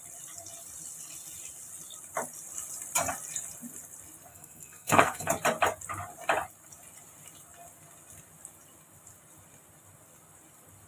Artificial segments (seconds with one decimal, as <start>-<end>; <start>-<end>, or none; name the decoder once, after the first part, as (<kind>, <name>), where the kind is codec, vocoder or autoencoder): 4.3-5.3 (codec, SNAC)